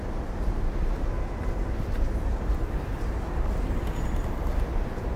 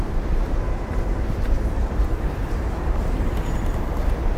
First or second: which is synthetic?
second